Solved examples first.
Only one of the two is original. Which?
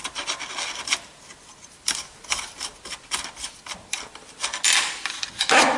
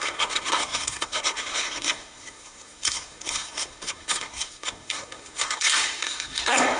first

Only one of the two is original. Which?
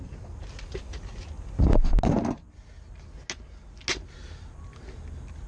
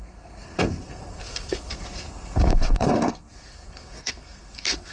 first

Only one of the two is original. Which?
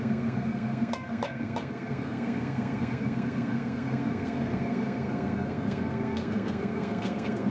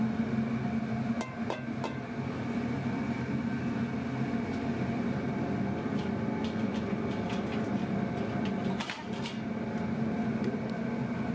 second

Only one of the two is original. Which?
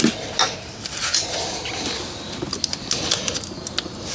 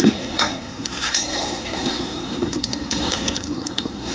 first